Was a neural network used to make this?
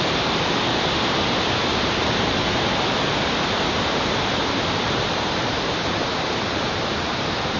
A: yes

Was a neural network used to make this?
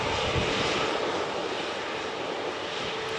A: yes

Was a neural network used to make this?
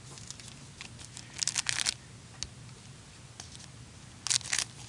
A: no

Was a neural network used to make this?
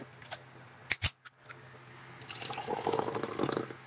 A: no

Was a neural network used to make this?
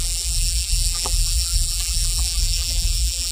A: yes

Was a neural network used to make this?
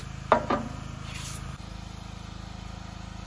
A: no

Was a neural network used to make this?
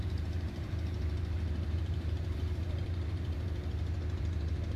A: yes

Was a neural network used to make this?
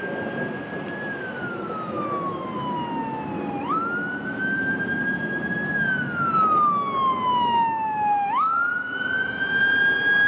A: no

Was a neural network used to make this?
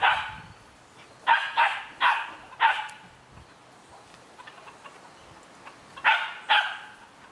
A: no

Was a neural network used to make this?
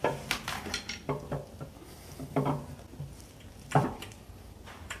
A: yes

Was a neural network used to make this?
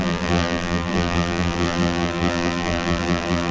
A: yes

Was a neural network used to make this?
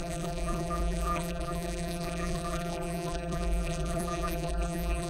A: yes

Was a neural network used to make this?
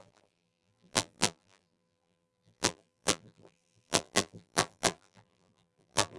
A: yes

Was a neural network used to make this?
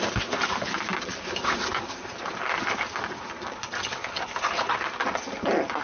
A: no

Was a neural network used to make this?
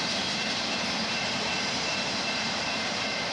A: yes